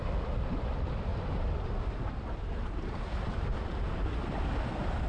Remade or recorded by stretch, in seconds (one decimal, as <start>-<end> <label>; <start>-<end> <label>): 0.0-5.1 recorded

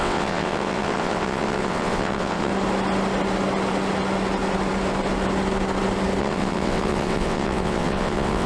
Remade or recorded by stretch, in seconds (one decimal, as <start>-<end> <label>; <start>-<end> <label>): 0.0-2.5 remade; 2.5-6.2 recorded; 6.2-8.5 remade